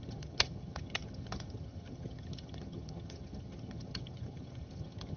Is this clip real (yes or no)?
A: no